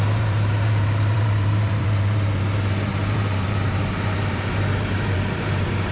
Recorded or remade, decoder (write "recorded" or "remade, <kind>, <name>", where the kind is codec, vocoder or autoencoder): remade, vocoder, BigVGAN v2